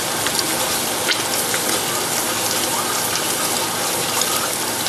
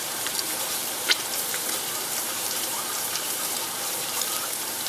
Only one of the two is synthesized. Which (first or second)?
second